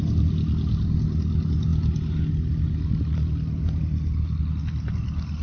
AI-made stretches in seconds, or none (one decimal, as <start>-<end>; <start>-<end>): none

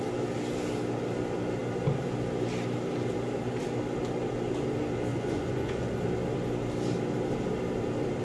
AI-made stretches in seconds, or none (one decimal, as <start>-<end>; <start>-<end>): 5.1-5.9

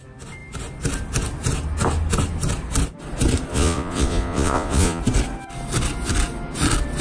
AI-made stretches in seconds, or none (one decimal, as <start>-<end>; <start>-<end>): 3.5-5.0

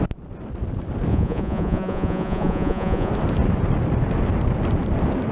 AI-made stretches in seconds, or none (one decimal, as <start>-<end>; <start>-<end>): 1.1-3.1

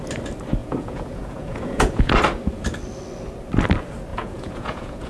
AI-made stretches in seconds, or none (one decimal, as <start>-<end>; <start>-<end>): 0.6-2.1; 4.1-5.1